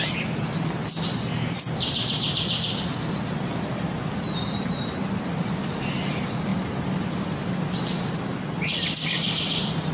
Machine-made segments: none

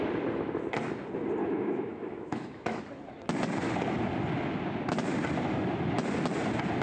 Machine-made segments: 1.4-2.8